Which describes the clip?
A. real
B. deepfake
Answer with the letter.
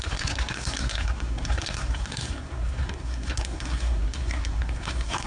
B